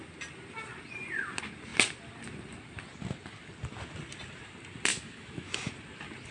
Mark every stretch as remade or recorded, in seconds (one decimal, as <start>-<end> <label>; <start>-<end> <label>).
0.0-4.9 recorded; 4.9-5.7 remade; 5.7-6.3 recorded